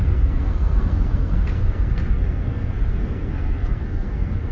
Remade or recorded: remade